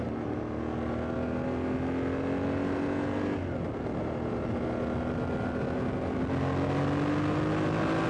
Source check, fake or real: real